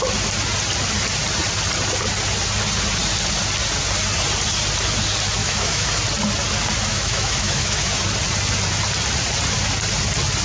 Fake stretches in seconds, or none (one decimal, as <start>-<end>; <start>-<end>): 5.4-6.0; 6.9-8.0